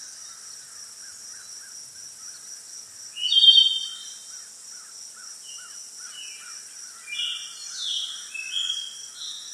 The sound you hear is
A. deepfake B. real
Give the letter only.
B